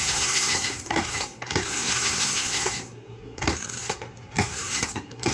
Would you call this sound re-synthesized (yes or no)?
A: yes